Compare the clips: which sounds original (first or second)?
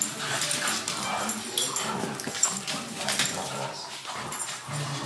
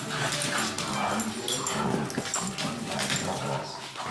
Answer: second